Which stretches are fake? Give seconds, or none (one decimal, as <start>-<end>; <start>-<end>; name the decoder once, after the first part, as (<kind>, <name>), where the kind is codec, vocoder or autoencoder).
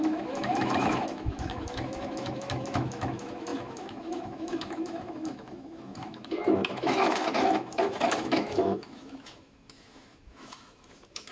0.0-11.3 (autoencoder, DAC-VAE)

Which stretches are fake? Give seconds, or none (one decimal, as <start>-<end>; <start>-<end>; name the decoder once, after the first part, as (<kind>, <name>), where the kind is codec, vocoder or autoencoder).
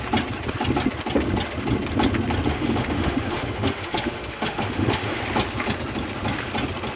2.5-5.2 (autoencoder, DAC-VAE)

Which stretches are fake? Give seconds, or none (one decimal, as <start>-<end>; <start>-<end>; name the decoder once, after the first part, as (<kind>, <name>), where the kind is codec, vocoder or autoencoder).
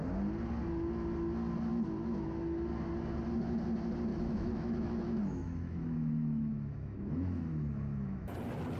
4.1-8.3 (autoencoder, DAC-VAE)